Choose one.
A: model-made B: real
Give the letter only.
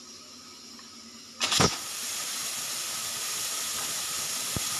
B